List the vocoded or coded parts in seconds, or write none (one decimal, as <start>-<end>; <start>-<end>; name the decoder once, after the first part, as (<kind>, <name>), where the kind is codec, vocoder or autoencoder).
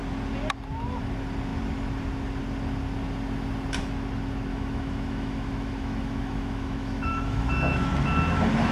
4.5-7.9 (autoencoder, DAC-VAE)